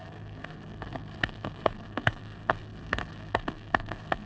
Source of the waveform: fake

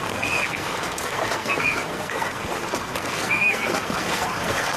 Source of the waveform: fake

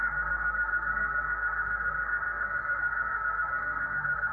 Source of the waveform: fake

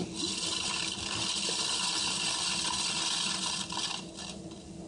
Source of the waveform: real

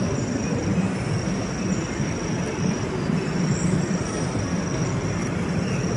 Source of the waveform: real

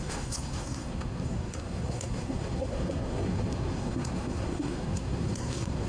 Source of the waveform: fake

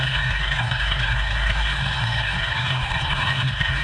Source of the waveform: fake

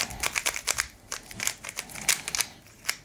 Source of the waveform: real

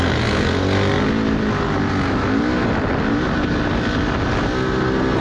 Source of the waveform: real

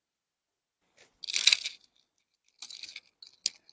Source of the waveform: real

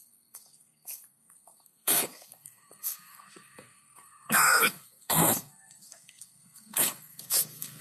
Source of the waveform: fake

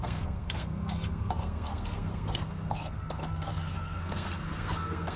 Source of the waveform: fake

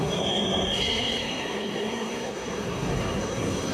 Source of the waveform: fake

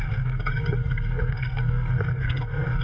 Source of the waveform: fake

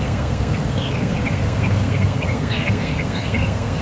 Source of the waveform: fake